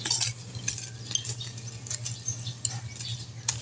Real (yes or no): yes